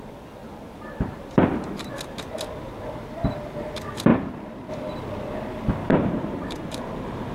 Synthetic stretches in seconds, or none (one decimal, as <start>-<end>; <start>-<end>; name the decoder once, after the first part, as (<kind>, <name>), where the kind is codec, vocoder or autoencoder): 0.4-1.9 (vocoder, BigVGAN v2); 4.1-4.7; 5.8-7.3